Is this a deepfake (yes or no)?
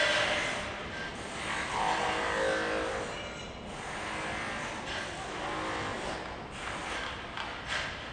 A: no